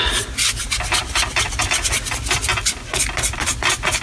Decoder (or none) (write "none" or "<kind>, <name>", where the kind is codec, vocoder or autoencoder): none